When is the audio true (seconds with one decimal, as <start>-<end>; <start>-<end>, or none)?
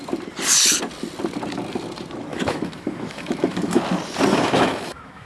0.0-2.3; 3.8-4.3